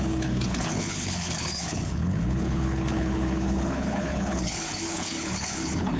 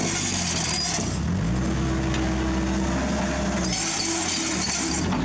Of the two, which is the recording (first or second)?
second